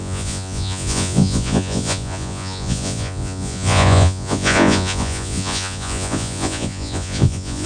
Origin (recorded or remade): remade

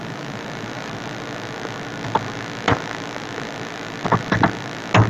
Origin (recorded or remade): recorded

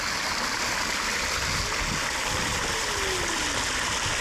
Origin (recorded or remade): recorded